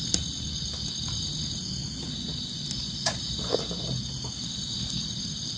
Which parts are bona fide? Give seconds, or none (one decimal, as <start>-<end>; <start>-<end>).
0.0-5.6

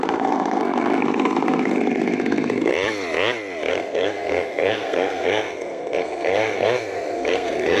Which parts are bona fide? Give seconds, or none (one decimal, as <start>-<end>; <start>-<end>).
2.7-3.7